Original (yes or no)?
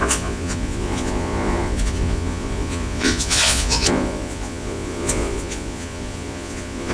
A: no